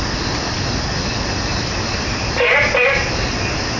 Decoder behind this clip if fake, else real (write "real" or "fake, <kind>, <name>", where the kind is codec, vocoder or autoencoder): real